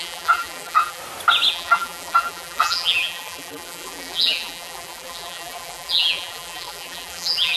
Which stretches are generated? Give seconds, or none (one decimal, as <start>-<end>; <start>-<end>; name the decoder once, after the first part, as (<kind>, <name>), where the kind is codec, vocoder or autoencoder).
0.0-1.0 (vocoder, BigVGAN v2); 1.5-7.6